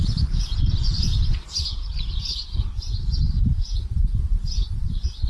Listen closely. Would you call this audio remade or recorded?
remade